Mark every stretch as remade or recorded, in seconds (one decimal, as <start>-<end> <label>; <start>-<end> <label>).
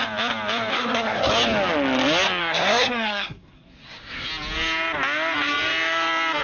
0.0-0.7 recorded; 0.7-1.3 remade; 1.3-2.4 recorded; 2.4-4.3 remade; 4.3-6.4 recorded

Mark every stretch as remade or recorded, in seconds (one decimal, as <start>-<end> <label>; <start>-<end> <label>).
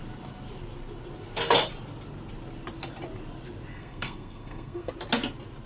0.0-3.7 recorded; 3.7-4.9 remade; 4.9-5.7 recorded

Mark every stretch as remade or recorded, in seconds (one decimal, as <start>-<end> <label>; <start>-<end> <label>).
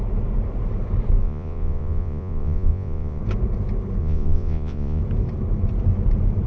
0.0-1.2 recorded; 1.2-3.2 remade; 3.2-4.0 recorded; 4.0-5.0 remade; 5.0-6.5 recorded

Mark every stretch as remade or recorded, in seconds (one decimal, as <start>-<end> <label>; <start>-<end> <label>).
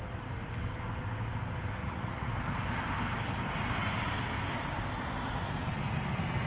0.0-1.8 recorded; 1.8-2.3 remade; 2.3-6.5 recorded